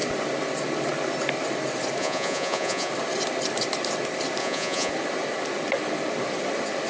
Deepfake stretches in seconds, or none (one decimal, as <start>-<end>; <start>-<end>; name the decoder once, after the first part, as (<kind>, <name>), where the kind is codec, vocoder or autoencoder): 2.0-2.9 (vocoder, Vocos); 4.4-4.9